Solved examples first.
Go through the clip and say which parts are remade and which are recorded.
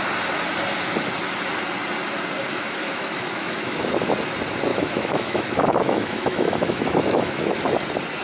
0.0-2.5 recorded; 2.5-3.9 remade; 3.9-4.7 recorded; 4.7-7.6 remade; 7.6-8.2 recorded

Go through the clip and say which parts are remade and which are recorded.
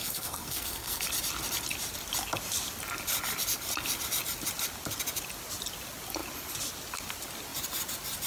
0.0-1.0 remade; 1.0-8.3 recorded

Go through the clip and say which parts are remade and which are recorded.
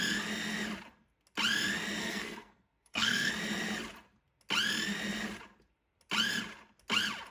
0.0-2.0 recorded; 2.0-3.3 remade; 3.3-7.3 recorded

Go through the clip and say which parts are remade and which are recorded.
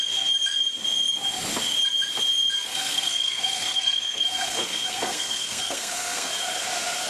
0.0-2.7 recorded; 2.7-6.3 remade; 6.3-7.1 recorded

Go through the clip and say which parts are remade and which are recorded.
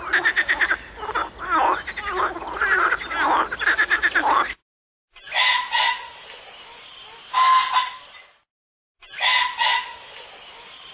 0.0-10.9 recorded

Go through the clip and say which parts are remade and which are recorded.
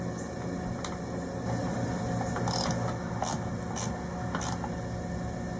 0.0-1.6 recorded; 1.6-2.4 remade; 2.4-5.6 recorded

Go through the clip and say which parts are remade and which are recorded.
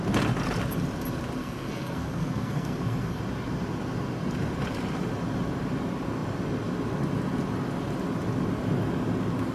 0.0-1.4 recorded; 1.4-3.2 remade; 3.2-9.5 recorded